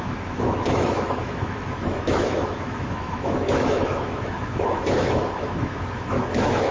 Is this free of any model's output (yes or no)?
no